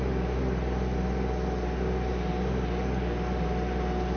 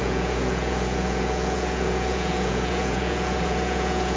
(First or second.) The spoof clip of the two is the second